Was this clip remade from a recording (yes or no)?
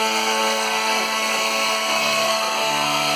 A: yes